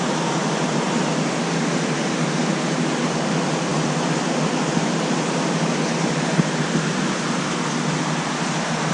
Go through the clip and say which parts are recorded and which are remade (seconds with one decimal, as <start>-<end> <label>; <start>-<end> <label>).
0.0-8.9 recorded